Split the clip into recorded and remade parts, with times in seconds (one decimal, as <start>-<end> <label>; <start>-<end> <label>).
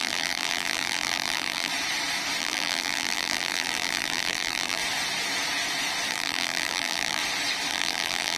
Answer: 0.0-1.7 remade; 1.7-2.4 recorded; 2.4-4.8 remade; 4.8-6.1 recorded; 6.1-7.2 remade; 7.2-7.7 recorded; 7.7-8.4 remade